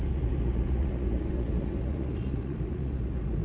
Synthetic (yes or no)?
yes